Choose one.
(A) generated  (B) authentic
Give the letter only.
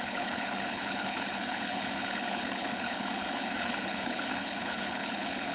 A